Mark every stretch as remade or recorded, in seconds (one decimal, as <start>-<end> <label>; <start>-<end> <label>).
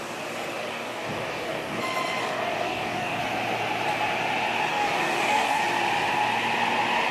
0.0-0.7 recorded; 0.7-1.8 remade; 1.8-2.2 recorded; 2.2-3.2 remade; 3.2-4.7 recorded; 4.7-5.6 remade; 5.6-7.1 recorded